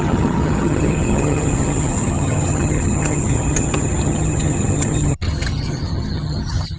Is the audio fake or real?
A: fake